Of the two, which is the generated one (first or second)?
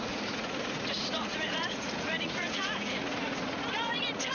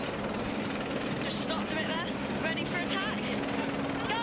first